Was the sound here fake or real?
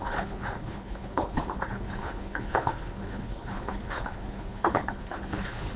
fake